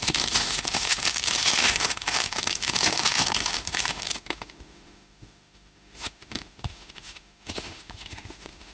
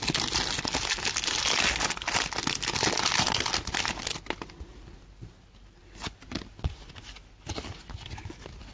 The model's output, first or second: first